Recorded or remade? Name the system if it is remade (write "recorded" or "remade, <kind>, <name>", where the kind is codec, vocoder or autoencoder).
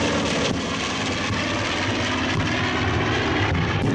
recorded